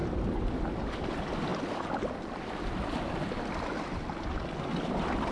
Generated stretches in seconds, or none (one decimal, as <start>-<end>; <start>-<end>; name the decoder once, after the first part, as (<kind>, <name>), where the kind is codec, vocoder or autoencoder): none

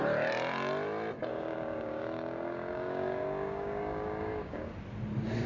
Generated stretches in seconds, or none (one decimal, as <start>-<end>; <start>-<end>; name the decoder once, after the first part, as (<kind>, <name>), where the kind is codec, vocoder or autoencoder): 1.3-4.6 (codec, DAC)

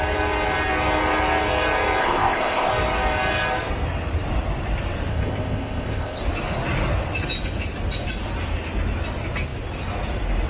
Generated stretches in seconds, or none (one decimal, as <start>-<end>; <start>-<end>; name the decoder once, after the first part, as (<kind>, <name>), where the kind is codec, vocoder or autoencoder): 2.0-2.7 (codec, ZipCodec); 5.1-6.2

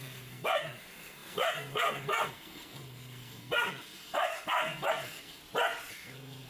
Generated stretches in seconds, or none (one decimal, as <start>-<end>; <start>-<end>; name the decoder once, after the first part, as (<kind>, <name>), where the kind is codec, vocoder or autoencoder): 0.0-5.4 (codec, SNAC); 5.9-6.5